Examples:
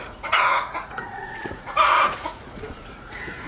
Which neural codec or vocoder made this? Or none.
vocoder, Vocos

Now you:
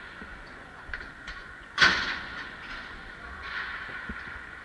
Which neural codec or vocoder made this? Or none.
vocoder, Vocos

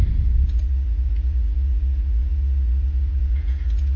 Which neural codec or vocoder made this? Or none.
vocoder, Vocos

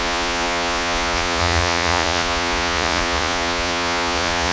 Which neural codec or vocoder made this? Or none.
vocoder, Vocos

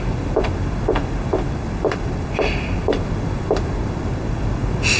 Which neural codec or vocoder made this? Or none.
none